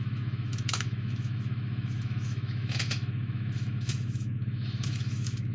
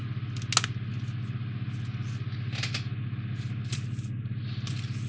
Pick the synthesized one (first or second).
first